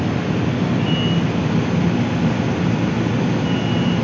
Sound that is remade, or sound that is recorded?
recorded